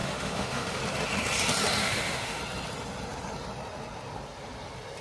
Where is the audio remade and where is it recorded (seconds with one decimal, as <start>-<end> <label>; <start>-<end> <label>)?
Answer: 0.0-0.8 remade; 0.8-1.8 recorded; 1.8-2.4 remade; 2.4-5.0 recorded

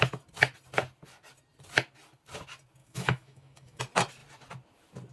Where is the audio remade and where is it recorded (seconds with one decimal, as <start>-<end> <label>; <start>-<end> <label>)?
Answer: 0.0-2.8 recorded; 2.8-3.8 remade; 3.8-5.1 recorded